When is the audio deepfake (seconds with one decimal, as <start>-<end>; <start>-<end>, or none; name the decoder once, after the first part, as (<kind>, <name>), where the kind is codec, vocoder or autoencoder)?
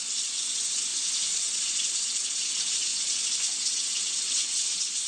0.0-5.1 (vocoder, WaveNeXt)